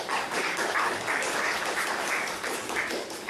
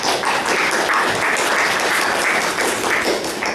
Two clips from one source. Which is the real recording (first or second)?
second